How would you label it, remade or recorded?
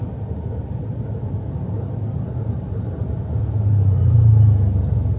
recorded